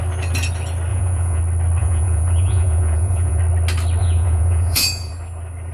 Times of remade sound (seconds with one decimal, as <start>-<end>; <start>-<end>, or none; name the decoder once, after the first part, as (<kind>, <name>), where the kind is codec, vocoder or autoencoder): 0.9-1.4 (vocoder, Vocos); 1.8-3.4; 4.0-5.1